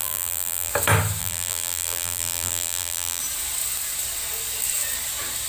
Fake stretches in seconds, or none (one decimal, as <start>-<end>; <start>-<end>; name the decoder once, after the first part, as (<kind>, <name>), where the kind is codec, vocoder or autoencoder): 0.0-0.7 (vocoder, BigVGAN v2); 1.2-3.2